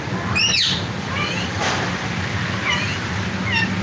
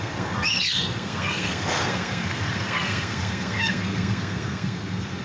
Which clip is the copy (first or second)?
second